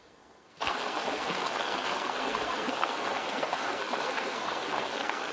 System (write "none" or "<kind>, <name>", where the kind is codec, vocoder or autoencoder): codec, SNAC